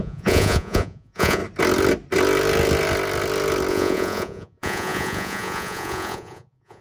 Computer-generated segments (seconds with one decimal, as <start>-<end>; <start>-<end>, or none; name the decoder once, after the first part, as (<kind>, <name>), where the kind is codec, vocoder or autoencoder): 0.0-1.4 (vocoder, Vocos); 3.7-6.8